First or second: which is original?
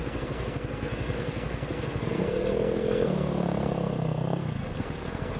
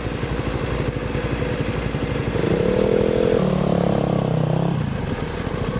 second